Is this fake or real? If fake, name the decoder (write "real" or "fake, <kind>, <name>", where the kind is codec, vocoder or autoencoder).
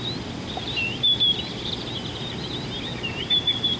real